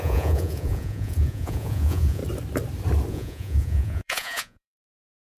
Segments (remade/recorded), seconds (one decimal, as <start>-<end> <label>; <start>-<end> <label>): 0.0-2.2 remade; 2.2-3.1 recorded; 3.1-5.4 remade